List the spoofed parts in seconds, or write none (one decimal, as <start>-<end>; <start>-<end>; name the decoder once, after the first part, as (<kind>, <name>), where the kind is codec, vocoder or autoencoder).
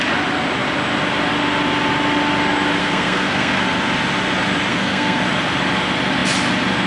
2.8-3.6 (codec, SNAC); 4.7-5.2